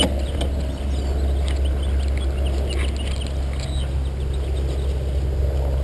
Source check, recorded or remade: recorded